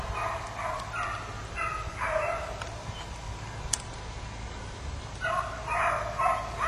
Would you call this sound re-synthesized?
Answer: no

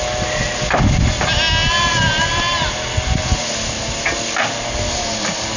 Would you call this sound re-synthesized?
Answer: no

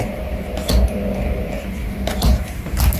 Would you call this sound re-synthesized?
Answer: no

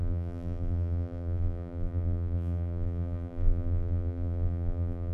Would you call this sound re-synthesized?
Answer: yes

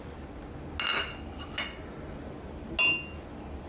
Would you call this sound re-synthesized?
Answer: no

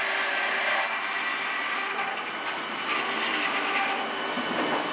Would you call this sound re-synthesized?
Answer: no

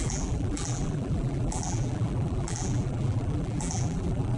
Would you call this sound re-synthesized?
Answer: yes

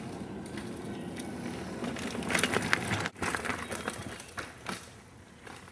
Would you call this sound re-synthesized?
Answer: no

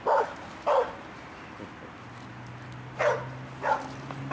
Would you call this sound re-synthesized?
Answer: no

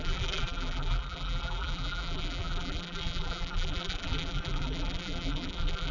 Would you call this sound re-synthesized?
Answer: yes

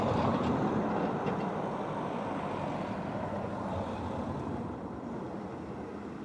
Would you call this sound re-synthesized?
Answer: yes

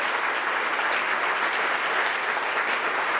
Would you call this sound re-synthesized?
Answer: no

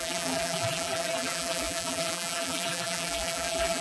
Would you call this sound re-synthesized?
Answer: yes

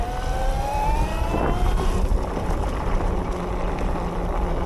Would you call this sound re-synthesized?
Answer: no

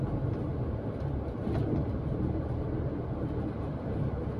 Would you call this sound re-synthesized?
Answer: no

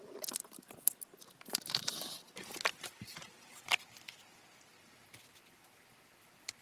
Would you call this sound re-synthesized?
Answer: no